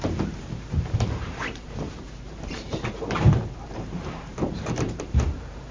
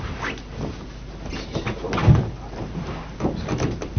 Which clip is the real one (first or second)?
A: second